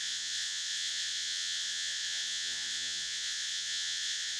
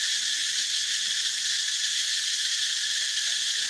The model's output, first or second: first